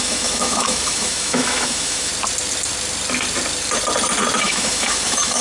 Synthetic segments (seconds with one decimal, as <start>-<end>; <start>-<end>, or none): 0.0-2.1; 4.4-5.4